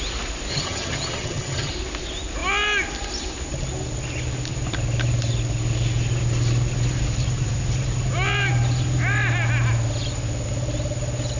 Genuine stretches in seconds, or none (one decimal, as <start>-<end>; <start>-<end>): 0.0-0.5; 1.7-11.4